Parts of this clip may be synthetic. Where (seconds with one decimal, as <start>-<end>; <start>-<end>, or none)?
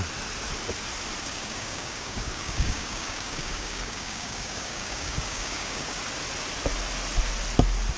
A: 1.2-6.0